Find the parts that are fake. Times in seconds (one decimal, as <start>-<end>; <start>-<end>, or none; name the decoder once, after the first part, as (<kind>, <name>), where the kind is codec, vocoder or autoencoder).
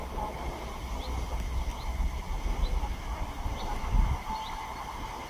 1.7-3.6 (vocoder, BigVGAN v2)